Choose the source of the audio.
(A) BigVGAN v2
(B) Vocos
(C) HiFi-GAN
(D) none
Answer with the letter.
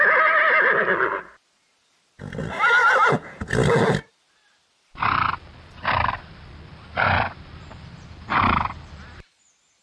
D